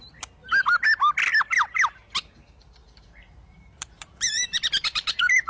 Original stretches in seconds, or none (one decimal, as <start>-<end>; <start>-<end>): 0.0-2.8